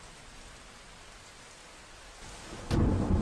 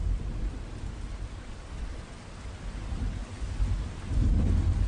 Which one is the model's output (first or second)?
second